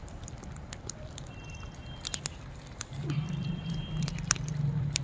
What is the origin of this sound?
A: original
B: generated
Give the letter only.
B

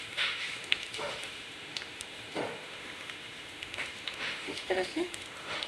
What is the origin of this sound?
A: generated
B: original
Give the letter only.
A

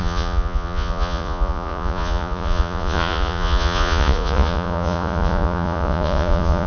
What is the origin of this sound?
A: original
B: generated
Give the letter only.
B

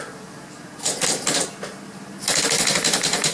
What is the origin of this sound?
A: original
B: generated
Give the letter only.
A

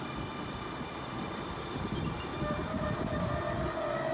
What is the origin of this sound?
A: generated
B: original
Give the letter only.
B